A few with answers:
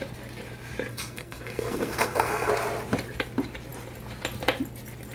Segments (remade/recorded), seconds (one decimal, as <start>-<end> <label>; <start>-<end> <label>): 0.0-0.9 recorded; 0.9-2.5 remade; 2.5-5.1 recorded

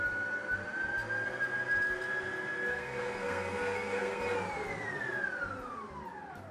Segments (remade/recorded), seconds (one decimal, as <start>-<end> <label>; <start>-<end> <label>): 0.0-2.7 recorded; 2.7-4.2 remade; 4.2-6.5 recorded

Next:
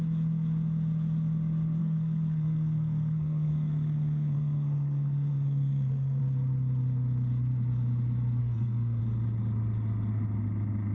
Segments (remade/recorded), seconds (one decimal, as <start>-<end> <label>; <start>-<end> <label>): 0.0-1.8 recorded; 1.8-6.2 remade; 6.2-8.4 recorded; 8.4-9.0 remade; 9.0-10.9 recorded

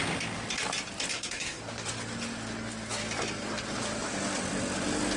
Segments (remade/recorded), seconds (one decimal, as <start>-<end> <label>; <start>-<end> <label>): 0.0-1.1 recorded; 1.1-1.6 remade; 1.6-5.2 recorded